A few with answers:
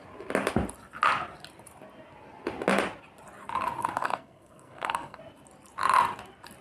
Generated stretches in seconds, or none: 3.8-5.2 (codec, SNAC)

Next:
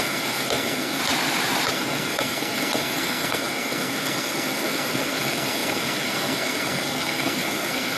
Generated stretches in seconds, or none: 0.0-1.0 (codec, SNAC); 1.7-8.0

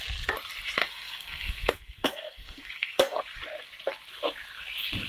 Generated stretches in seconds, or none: 0.8-3.2 (codec, SNAC)

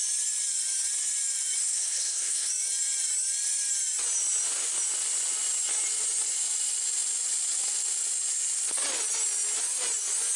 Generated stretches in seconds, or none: 1.6-2.5 (codec, SNAC)

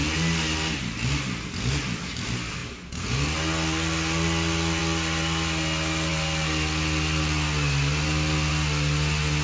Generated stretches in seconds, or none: none

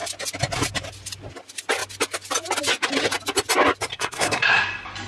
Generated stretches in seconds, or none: 3.9-4.6 (codec, SNAC)